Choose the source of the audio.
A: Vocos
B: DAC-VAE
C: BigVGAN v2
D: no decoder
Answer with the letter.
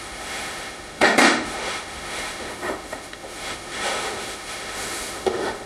B